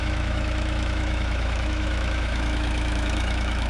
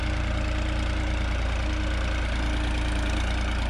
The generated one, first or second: first